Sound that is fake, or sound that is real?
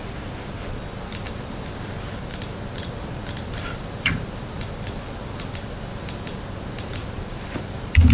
real